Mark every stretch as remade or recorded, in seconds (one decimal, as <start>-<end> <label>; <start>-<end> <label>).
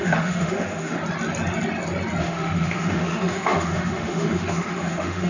0.0-1.0 remade; 1.0-2.2 recorded; 2.2-5.3 remade